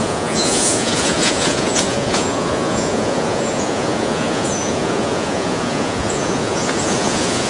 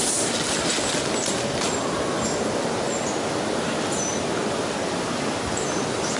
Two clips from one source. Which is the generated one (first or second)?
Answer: first